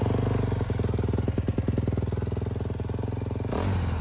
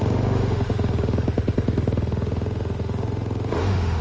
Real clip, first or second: first